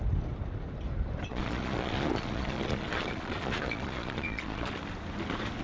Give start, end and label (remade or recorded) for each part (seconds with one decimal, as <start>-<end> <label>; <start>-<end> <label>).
0.0-1.3 recorded; 1.3-4.7 remade; 4.7-5.6 recorded